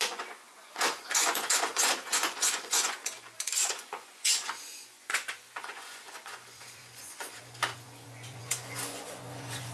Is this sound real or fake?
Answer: fake